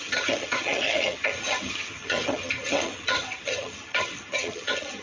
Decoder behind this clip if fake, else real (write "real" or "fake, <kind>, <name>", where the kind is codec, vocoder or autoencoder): fake, vocoder, HiFi-GAN